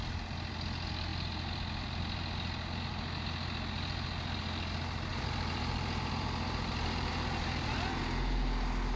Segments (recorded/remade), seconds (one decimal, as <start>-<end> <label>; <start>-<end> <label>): 0.0-5.1 recorded; 5.1-8.0 remade; 8.0-9.0 recorded